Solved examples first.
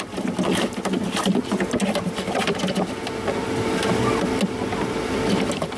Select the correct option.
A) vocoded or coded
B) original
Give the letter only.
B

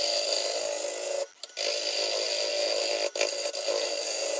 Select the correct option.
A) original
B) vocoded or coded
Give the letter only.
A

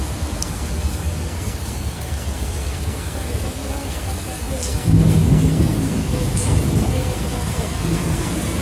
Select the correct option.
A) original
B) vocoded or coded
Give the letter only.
B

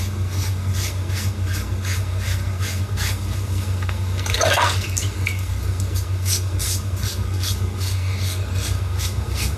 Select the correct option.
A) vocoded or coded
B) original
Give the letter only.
A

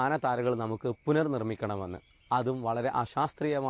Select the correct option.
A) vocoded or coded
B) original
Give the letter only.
B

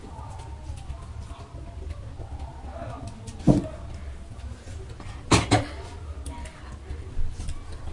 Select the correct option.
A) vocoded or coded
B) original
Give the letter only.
B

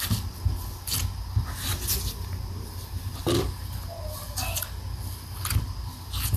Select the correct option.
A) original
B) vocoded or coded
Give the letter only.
A